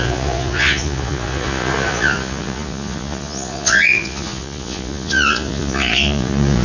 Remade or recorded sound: remade